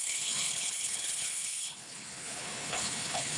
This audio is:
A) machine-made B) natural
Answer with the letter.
A